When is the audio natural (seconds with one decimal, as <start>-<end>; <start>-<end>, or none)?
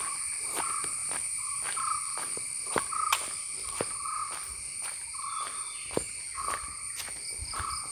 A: 0.0-1.0; 3.8-7.9